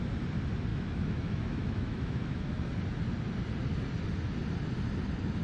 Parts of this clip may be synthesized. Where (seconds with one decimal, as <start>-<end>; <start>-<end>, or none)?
0.7-2.7